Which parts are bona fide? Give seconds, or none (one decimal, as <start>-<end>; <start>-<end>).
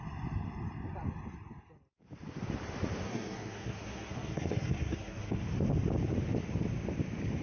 0.0-3.0; 5.4-7.4